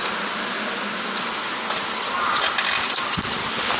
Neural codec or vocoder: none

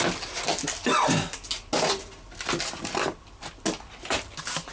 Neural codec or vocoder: none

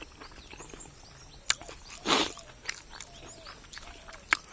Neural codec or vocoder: none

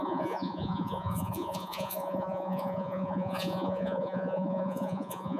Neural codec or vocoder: vocoder, Vocos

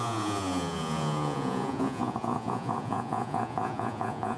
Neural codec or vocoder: vocoder, Vocos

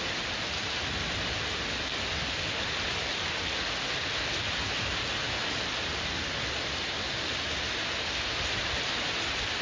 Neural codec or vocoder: none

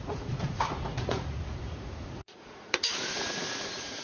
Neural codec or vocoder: vocoder, Vocos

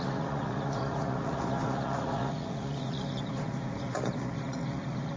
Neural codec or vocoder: vocoder, Vocos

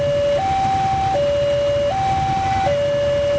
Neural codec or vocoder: none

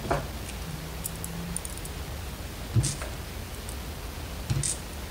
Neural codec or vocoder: none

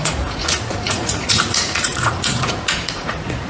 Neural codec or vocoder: vocoder, Vocos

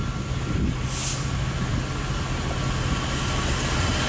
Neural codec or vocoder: none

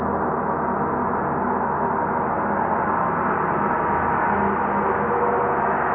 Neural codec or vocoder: none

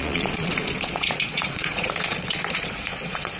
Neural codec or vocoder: vocoder, Vocos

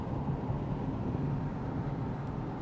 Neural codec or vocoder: none